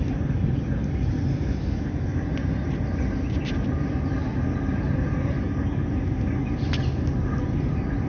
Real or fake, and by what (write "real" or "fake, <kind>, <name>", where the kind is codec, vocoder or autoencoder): real